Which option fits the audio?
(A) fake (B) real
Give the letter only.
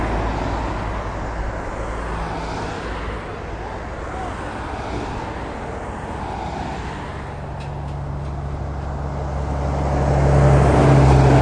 B